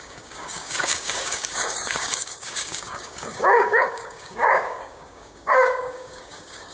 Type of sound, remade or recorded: remade